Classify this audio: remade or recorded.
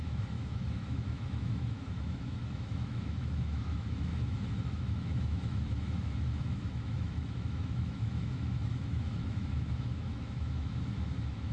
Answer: remade